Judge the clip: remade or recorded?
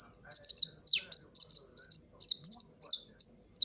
recorded